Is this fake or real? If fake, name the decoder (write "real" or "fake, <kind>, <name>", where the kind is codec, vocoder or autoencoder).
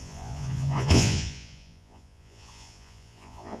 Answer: fake, vocoder, Vocos